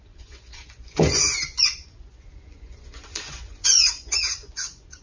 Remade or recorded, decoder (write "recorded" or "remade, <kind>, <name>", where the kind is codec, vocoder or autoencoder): remade, vocoder, Vocos